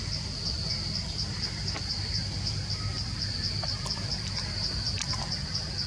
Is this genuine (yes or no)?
no